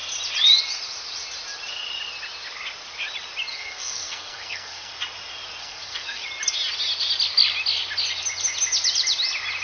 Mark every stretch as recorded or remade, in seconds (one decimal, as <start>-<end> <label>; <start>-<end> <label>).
0.0-3.5 recorded; 3.5-4.9 remade; 4.9-5.6 recorded; 5.6-6.2 remade; 6.2-9.6 recorded